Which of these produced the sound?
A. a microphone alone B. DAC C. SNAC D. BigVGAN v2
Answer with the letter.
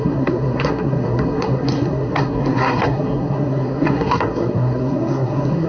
C